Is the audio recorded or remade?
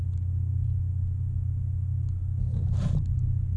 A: recorded